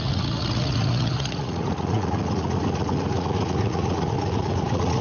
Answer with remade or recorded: remade